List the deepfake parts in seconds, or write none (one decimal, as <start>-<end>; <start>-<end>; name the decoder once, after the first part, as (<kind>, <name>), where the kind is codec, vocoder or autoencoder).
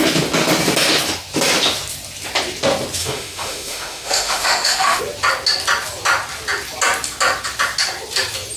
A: 3.0-5.0 (autoencoder, DAC-VAE)